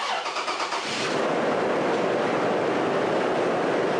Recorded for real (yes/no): no